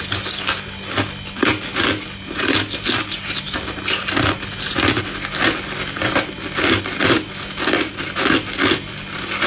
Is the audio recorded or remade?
recorded